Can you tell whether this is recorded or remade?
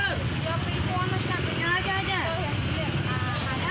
recorded